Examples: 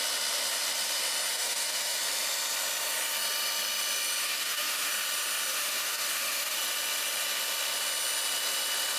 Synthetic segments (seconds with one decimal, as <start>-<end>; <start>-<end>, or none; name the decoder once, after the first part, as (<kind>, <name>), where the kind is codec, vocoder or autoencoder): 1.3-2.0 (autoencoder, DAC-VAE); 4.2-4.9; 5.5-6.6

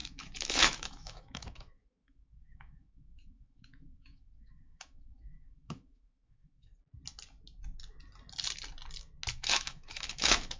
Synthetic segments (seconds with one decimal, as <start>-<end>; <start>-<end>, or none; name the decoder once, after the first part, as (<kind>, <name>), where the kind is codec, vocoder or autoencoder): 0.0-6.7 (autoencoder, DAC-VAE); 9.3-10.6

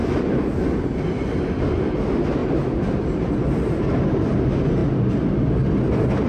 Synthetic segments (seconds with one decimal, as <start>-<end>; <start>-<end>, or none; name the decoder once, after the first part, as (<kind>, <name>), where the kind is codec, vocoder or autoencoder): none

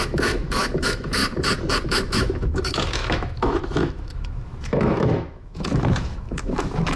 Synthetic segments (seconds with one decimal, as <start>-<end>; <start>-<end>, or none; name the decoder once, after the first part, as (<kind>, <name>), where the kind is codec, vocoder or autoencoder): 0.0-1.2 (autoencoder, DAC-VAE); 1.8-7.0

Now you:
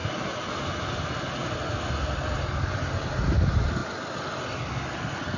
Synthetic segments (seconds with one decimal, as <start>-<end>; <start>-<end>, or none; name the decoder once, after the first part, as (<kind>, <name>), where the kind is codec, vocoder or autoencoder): none

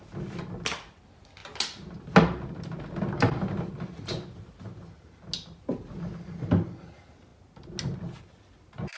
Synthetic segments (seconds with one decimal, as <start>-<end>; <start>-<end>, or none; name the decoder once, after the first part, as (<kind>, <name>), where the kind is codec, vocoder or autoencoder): none